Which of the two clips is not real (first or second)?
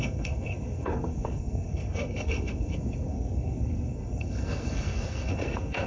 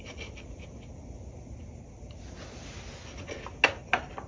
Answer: first